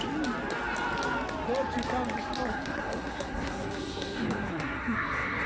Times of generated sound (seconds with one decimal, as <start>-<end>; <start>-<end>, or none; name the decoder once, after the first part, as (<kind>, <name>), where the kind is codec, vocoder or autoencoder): 2.5-5.5 (codec, SNAC)